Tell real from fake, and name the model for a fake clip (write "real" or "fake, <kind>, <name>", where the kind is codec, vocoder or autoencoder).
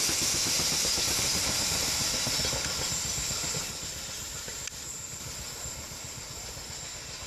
real